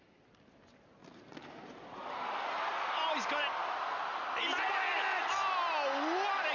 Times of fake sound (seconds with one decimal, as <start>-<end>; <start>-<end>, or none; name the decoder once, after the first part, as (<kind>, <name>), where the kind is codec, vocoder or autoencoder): none